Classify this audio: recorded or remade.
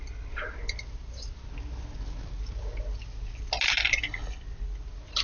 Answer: recorded